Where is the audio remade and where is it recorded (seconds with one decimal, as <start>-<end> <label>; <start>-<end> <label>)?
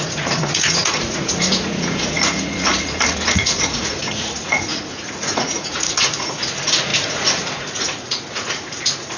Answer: 0.0-9.2 remade